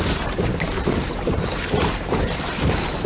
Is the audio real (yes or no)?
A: no